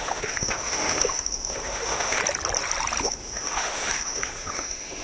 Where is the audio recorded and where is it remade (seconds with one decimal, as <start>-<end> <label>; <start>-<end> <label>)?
0.0-2.2 remade; 2.2-3.0 recorded; 3.0-5.0 remade